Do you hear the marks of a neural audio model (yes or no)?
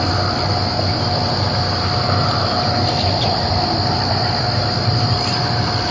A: no